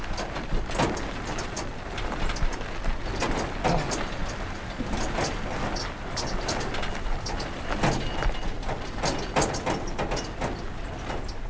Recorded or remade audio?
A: recorded